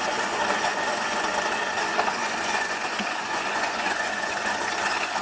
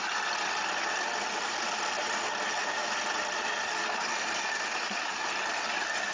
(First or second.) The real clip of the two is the second